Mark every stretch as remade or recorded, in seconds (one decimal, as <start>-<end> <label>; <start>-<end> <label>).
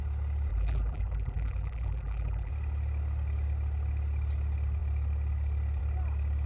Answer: 0.0-0.5 recorded; 0.5-2.5 remade; 2.5-6.5 recorded